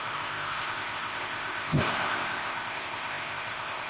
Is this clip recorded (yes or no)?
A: no